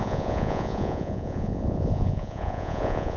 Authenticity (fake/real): fake